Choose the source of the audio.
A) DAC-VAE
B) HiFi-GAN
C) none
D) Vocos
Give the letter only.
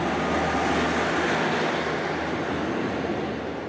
C